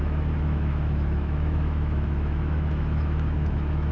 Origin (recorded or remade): remade